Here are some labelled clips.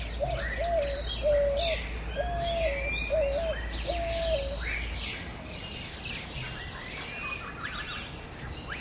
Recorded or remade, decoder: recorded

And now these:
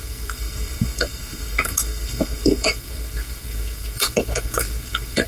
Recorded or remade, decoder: remade, codec, SNAC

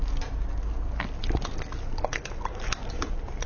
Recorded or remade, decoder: recorded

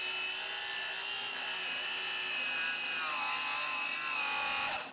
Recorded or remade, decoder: recorded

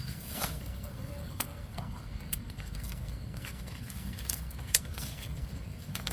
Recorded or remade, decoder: remade, codec, SNAC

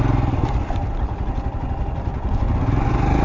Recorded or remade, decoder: recorded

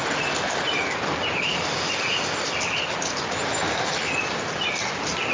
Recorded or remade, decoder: recorded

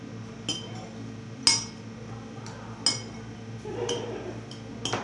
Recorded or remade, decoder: recorded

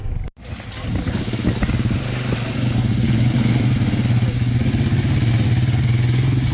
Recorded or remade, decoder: recorded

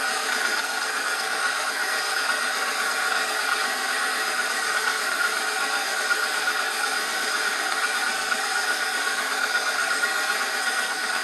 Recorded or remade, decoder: remade, codec, SNAC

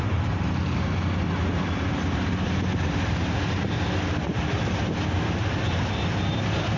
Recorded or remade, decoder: recorded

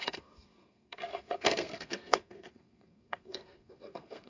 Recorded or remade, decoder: remade, codec, SNAC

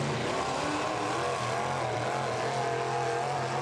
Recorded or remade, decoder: recorded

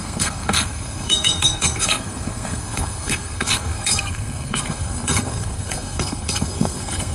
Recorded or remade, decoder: remade, codec, SNAC